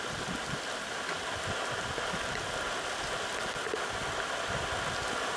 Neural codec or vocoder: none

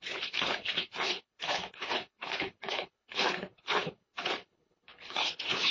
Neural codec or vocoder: codec, HILCodec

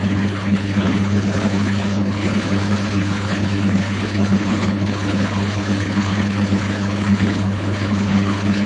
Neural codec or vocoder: codec, HILCodec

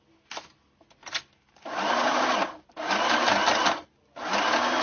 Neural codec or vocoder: none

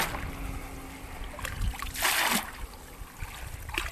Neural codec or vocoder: none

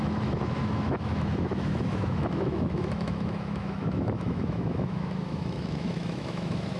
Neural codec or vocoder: autoencoder, DAC-VAE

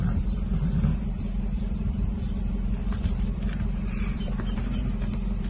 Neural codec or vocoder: vocoder, BigVGAN v2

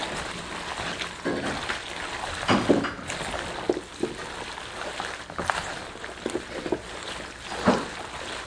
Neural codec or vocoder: none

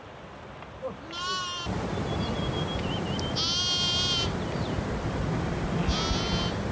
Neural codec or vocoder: none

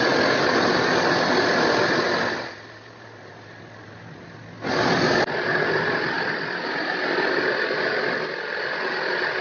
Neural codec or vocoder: none